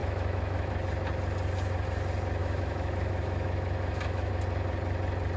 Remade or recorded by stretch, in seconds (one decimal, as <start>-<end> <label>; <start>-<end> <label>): 0.0-0.7 remade; 0.7-2.4 recorded; 2.4-4.3 remade; 4.3-5.4 recorded

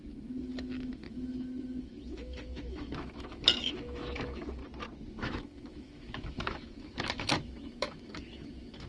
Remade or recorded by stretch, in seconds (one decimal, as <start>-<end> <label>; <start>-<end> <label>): 0.0-4.6 remade; 4.6-5.1 recorded; 5.1-8.9 remade

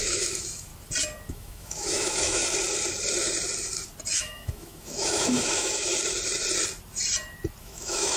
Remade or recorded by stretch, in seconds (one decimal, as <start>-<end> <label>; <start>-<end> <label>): 0.0-0.7 remade; 0.7-1.3 recorded; 1.3-2.4 remade; 2.4-4.1 recorded; 4.1-5.9 remade; 5.9-7.6 recorded; 7.6-8.2 remade

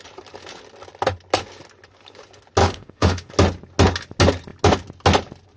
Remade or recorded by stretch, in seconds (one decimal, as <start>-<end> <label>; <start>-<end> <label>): 0.0-2.6 recorded; 2.6-3.3 remade; 3.3-5.6 recorded

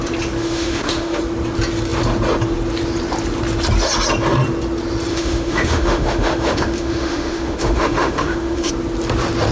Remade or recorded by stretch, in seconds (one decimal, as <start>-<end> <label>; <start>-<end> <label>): 0.0-0.4 recorded; 0.4-1.2 remade; 1.2-5.1 recorded; 5.1-8.7 remade; 8.7-9.5 recorded

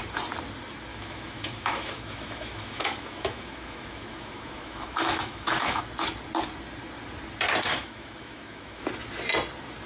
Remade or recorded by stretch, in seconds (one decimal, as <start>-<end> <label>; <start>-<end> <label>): 0.0-0.9 recorded; 0.9-5.8 remade; 5.8-7.7 recorded; 7.7-8.8 remade; 8.8-9.9 recorded